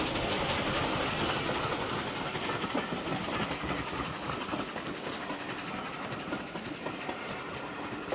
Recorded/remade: recorded